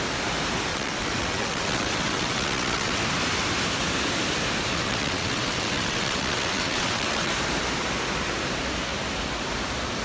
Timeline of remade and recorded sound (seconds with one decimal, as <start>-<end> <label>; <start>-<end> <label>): 0.0-0.7 recorded; 0.7-3.0 remade; 3.0-4.7 recorded; 4.7-7.3 remade; 7.3-10.0 recorded